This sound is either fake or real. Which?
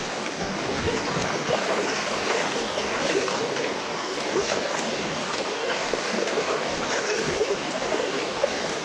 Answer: fake